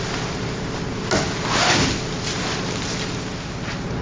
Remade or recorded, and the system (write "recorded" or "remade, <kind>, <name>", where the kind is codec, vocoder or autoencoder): recorded